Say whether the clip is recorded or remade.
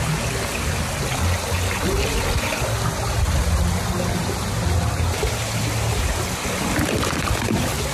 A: recorded